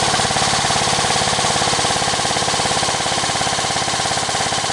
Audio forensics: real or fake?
real